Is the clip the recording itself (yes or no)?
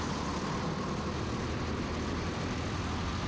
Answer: yes